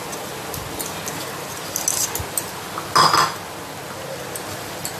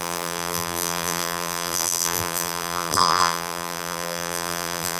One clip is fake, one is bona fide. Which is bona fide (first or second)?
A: first